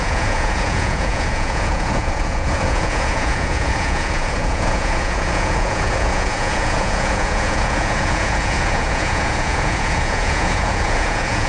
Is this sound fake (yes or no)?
yes